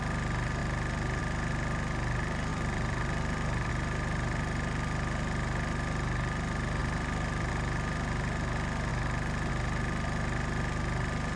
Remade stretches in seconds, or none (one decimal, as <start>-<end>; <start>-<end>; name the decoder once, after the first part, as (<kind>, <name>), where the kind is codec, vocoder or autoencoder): 2.5-3.7 (vocoder, BigVGAN v2); 6.8-7.5